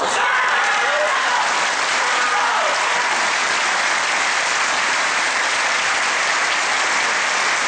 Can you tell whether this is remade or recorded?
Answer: remade